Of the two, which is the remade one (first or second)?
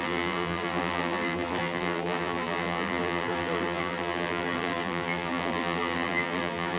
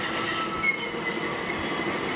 first